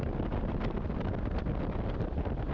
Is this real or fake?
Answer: real